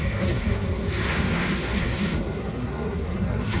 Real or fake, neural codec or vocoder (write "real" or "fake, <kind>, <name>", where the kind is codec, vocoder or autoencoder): fake, codec, SNAC